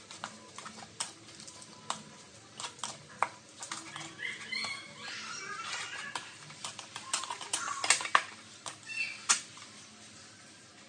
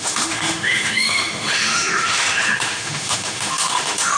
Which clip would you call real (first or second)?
first